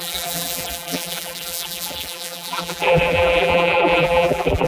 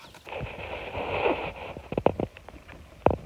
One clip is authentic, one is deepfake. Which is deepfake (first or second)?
first